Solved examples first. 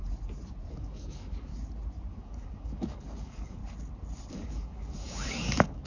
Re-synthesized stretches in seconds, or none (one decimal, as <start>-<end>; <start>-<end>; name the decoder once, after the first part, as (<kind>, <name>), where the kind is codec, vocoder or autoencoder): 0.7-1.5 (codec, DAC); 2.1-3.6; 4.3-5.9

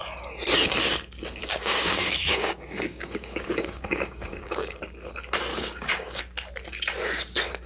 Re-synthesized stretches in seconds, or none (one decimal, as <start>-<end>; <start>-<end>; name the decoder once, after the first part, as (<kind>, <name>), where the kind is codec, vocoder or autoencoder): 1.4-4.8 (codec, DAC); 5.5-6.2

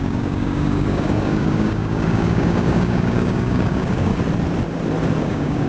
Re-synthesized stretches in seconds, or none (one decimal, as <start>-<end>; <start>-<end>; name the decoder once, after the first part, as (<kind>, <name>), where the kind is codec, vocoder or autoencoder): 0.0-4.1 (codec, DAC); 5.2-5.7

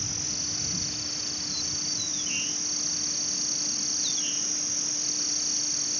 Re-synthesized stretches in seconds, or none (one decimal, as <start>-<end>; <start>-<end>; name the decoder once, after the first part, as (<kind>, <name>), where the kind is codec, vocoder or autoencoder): none

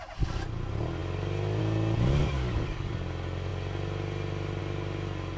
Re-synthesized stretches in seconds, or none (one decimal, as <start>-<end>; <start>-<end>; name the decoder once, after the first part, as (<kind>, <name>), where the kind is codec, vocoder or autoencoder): 2.2-2.9 (codec, DAC)